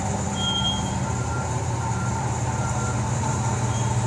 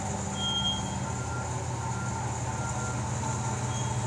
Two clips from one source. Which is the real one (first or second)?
second